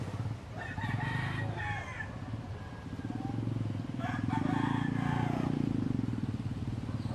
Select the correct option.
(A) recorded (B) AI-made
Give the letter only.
A